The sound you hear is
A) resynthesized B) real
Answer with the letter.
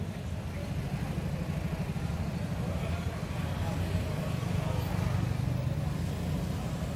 B